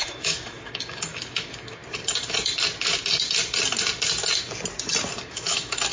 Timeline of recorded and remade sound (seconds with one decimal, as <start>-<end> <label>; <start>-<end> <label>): 0.0-1.8 remade; 1.8-5.3 recorded; 5.3-5.9 remade